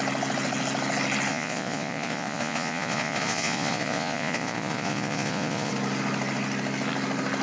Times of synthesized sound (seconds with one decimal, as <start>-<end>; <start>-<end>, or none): 1.3-5.7